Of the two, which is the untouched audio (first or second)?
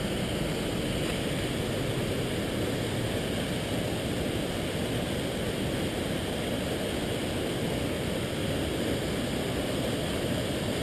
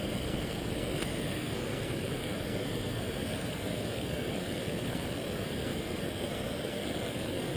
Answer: first